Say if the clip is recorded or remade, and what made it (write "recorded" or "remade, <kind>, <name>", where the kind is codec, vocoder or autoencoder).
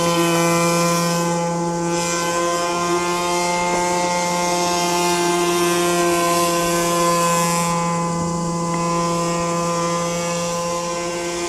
recorded